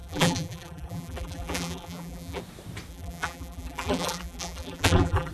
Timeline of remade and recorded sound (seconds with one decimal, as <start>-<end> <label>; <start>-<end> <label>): 0.0-2.4 remade; 2.4-2.9 recorded; 2.9-5.3 remade